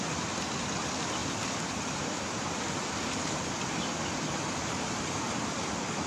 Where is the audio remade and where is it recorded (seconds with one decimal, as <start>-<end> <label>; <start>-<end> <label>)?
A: 0.0-1.2 recorded; 1.2-4.9 remade; 4.9-6.1 recorded